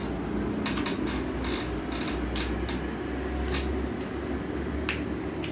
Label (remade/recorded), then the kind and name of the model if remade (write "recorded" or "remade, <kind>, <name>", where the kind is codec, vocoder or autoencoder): recorded